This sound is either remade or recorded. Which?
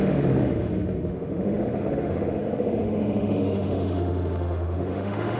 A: remade